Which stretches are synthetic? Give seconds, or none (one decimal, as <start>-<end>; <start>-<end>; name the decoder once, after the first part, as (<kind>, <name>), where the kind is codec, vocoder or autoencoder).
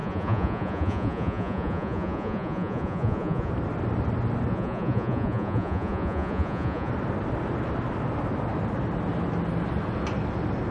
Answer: 0.0-3.5 (vocoder, Vocos); 4.5-6.9